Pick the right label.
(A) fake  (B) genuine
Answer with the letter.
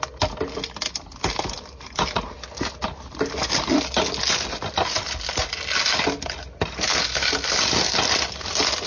B